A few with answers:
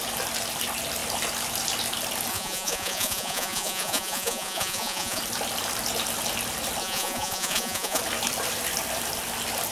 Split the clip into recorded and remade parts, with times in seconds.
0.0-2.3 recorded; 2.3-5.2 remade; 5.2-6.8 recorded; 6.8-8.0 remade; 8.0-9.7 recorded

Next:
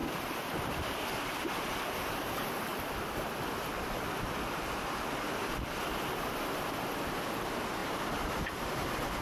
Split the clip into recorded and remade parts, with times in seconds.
0.0-1.1 remade; 1.1-2.7 recorded; 2.7-5.8 remade; 5.8-9.2 recorded

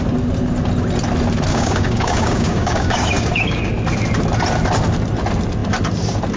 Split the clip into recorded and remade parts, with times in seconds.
0.0-1.5 recorded; 1.5-3.7 remade; 3.7-6.4 recorded

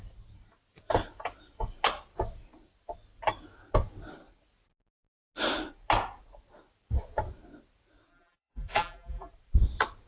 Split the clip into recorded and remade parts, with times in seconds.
0.0-8.1 recorded; 8.1-9.3 remade; 9.3-10.1 recorded

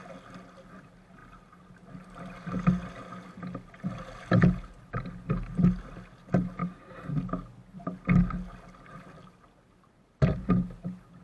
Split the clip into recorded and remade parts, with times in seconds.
0.0-11.2 recorded

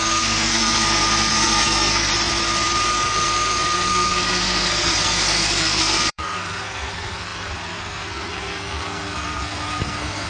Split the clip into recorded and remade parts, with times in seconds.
0.0-2.1 remade; 2.1-2.9 recorded; 2.9-10.3 remade